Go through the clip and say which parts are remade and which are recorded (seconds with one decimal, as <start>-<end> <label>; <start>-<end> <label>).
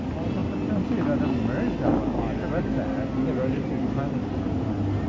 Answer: 0.0-5.1 recorded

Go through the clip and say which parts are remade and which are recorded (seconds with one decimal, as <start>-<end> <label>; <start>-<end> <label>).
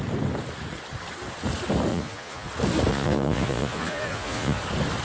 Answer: 0.0-1.9 recorded; 1.9-2.5 remade; 2.5-2.9 recorded; 2.9-4.6 remade; 4.6-5.0 recorded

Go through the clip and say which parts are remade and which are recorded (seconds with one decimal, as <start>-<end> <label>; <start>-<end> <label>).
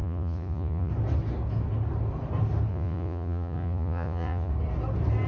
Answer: 0.0-0.9 remade; 0.9-2.7 recorded; 2.7-4.5 remade; 4.5-5.3 recorded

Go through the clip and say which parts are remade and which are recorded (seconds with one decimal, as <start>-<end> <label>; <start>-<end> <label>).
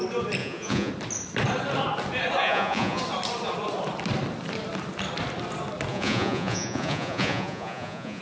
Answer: 0.0-0.4 recorded; 0.4-0.9 remade; 0.9-2.4 recorded; 2.4-3.0 remade; 3.0-5.9 recorded; 5.9-8.2 remade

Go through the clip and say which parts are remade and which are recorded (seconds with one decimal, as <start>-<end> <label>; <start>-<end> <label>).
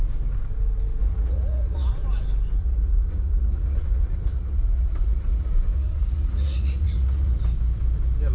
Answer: 0.0-1.0 recorded; 1.0-1.9 remade; 1.9-2.6 recorded; 2.6-7.4 remade; 7.4-8.3 recorded